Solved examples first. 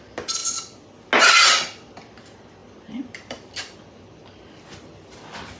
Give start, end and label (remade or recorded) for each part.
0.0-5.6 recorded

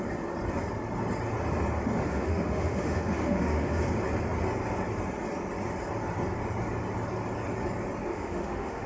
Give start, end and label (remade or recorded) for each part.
0.0-2.1 recorded; 2.1-3.8 remade; 3.8-8.1 recorded; 8.1-8.9 remade

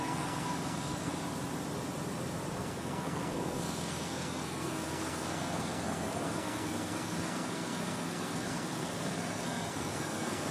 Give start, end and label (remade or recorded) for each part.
0.0-1.1 remade; 1.1-2.5 recorded; 2.5-10.5 remade

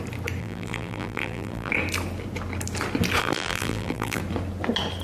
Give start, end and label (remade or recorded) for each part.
0.0-0.4 recorded; 0.4-1.7 remade; 1.7-3.2 recorded; 3.2-4.2 remade; 4.2-5.0 recorded

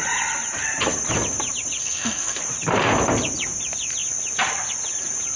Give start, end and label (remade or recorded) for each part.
0.0-1.8 recorded; 1.8-2.4 remade; 2.4-5.4 recorded

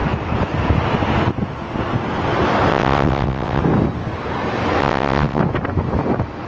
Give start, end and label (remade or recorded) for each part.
0.0-2.7 recorded; 2.7-3.6 remade; 3.6-4.8 recorded; 4.8-5.4 remade; 5.4-6.5 recorded

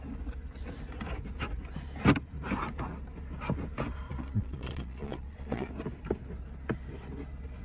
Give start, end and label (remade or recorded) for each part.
0.0-4.1 recorded; 4.1-5.7 remade; 5.7-7.6 recorded